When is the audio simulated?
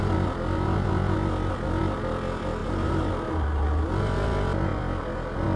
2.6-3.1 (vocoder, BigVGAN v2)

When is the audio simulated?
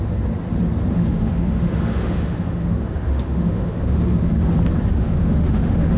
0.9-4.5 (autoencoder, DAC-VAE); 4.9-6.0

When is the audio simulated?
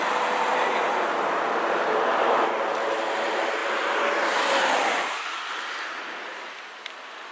none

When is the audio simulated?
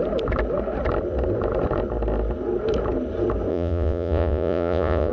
3.5-5.1 (vocoder, Vocos)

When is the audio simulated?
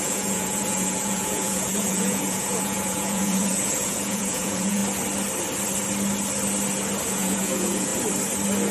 0.0-4.8 (vocoder, Vocos); 7.1-7.9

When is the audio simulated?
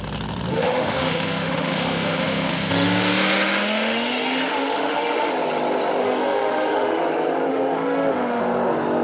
0.5-5.3 (autoencoder, DAC-VAE); 6.0-7.0; 7.5-8.4